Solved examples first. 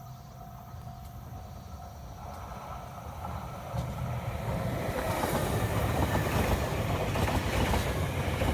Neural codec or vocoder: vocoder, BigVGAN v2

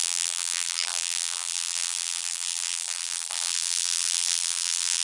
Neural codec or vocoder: vocoder, BigVGAN v2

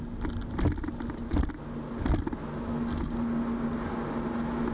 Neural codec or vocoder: none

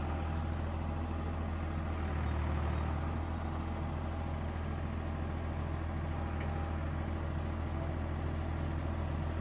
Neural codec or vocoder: none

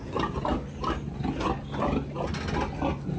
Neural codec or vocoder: none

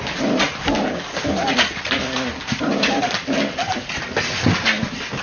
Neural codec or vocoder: none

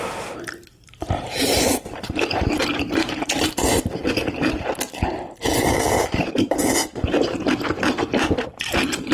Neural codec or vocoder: vocoder, BigVGAN v2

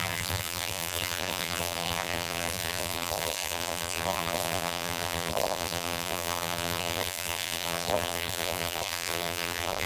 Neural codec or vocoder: vocoder, BigVGAN v2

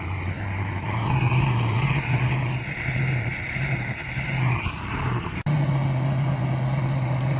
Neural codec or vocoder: none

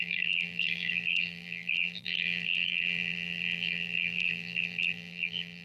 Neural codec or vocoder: vocoder, BigVGAN v2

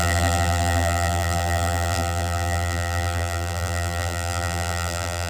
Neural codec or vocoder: vocoder, BigVGAN v2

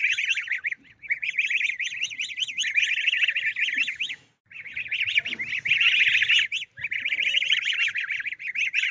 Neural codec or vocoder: none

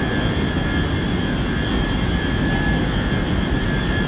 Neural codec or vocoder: none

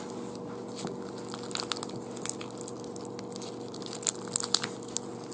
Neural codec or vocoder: none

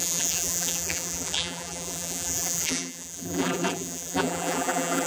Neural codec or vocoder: vocoder, BigVGAN v2